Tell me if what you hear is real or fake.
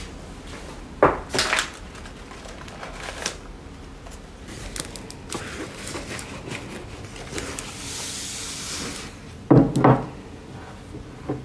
real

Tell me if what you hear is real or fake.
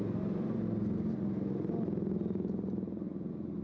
real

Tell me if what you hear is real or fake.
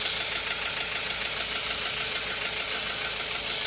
real